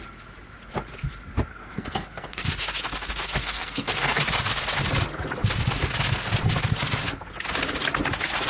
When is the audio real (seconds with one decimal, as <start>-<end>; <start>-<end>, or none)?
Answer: 0.0-1.5; 2.5-3.4; 4.2-8.5